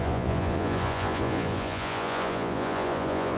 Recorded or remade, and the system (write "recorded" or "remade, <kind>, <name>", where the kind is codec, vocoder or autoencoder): remade, vocoder, Vocos